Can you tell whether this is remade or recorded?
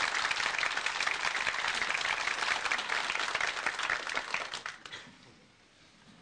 recorded